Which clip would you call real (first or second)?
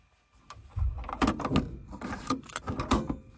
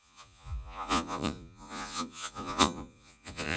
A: first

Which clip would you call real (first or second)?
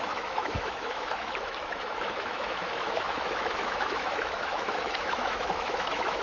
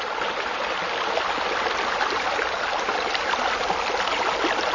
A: second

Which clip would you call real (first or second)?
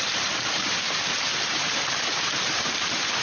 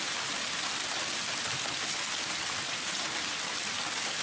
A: second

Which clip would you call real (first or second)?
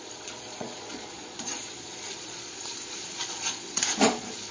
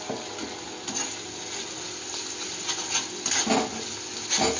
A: second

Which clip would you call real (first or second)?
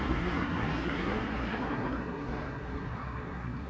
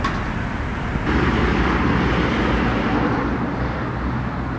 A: second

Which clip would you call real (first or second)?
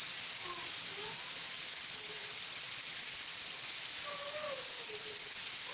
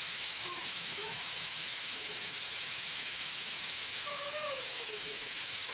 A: first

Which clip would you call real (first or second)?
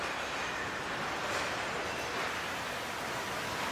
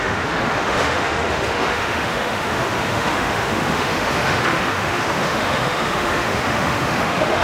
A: first